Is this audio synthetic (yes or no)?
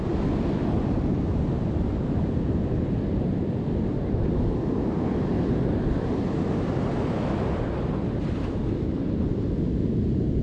no